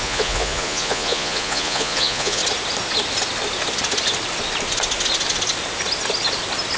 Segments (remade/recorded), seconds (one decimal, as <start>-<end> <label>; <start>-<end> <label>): 0.0-2.4 remade; 2.4-6.8 recorded